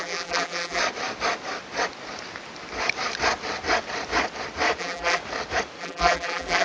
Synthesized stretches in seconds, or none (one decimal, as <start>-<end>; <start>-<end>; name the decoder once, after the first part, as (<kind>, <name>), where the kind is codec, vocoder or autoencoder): 0.0-0.8 (vocoder, BigVGAN v2); 4.8-5.2; 5.8-6.6